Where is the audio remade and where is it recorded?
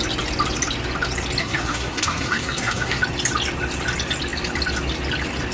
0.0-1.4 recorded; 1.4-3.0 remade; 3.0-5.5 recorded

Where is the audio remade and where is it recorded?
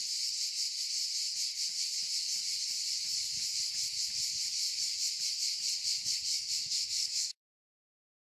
0.0-6.3 recorded; 6.3-8.3 remade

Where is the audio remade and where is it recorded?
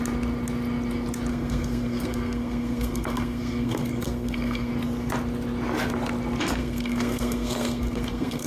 0.0-1.3 recorded; 1.3-4.7 remade; 4.7-6.6 recorded; 6.6-8.5 remade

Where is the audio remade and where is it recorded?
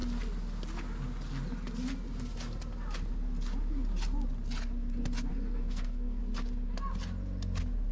0.0-5.3 recorded; 5.3-6.2 remade; 6.2-7.9 recorded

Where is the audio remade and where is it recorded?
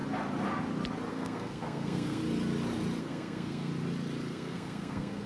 0.0-1.1 recorded; 1.1-2.2 remade; 2.2-3.0 recorded; 3.0-3.7 remade; 3.7-4.3 recorded; 4.3-5.3 remade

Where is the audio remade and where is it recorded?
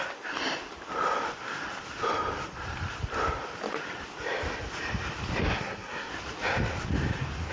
0.0-5.4 recorded; 5.4-6.1 remade; 6.1-7.5 recorded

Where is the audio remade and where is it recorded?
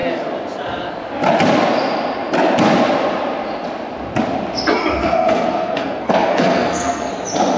0.0-5.0 recorded; 5.0-7.1 remade; 7.1-7.6 recorded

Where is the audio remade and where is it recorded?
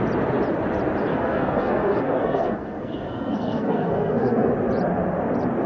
0.0-1.1 recorded; 1.1-4.5 remade; 4.5-5.7 recorded